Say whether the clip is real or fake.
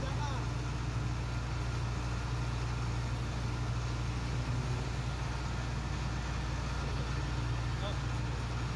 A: real